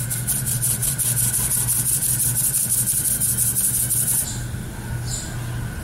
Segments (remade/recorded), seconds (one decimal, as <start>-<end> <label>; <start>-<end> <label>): 0.0-5.8 recorded